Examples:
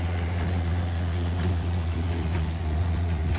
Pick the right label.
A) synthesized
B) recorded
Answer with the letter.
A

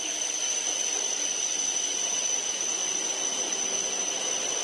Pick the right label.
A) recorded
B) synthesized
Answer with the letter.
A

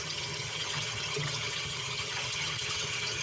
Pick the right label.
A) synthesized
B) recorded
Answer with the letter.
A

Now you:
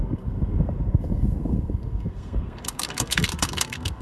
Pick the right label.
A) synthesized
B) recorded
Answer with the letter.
A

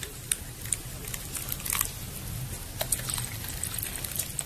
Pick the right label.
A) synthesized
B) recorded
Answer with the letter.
B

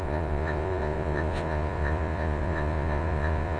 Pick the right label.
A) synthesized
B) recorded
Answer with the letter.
A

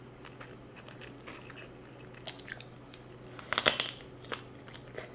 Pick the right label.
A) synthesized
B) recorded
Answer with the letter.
B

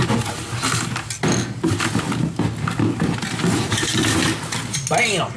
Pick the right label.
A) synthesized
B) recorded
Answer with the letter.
B